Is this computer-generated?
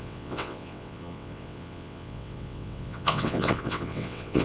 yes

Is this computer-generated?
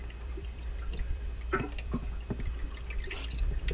yes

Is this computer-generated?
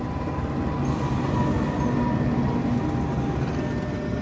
no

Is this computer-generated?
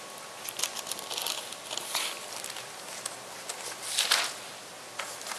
no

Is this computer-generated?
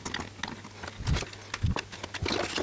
no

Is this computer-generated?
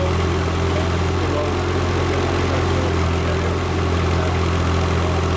no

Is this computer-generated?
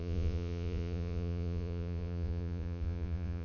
yes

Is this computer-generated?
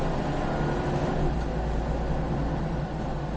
no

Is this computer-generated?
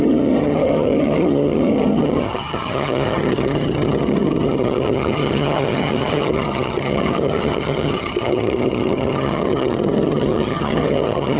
yes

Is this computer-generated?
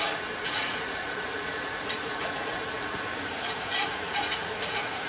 yes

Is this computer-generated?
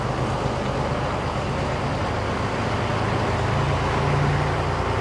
no